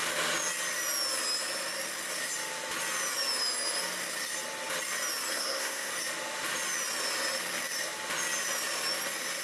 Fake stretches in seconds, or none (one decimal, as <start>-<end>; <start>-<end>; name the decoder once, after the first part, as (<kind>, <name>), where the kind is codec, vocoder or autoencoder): 5.3-5.9 (codec, SNAC)